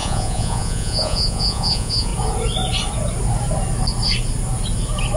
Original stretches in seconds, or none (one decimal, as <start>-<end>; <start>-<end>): 2.1-5.2